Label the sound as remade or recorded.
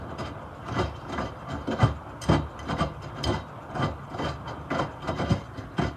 recorded